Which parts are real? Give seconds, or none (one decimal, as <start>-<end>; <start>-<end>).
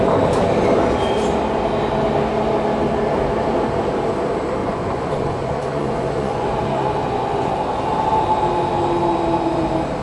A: 0.0-4.6; 7.5-10.0